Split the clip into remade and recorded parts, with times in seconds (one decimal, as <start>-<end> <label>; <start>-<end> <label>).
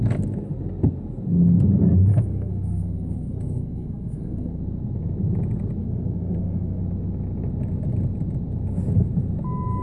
0.0-2.1 recorded; 2.1-4.6 remade; 4.6-5.8 recorded; 5.8-6.8 remade; 6.8-9.8 recorded